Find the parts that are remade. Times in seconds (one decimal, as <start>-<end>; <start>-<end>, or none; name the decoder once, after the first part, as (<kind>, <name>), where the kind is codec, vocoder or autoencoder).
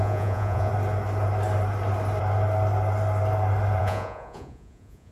0.0-0.7 (vocoder, Vocos); 3.8-5.1